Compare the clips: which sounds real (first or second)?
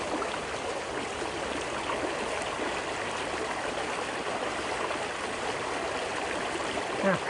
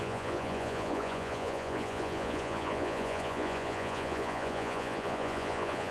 first